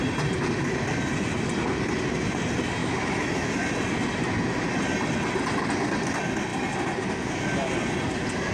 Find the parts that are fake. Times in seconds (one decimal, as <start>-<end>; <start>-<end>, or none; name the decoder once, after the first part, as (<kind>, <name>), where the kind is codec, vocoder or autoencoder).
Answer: 2.8-3.5 (autoencoder, DAC-VAE)